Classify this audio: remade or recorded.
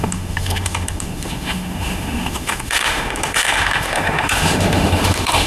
remade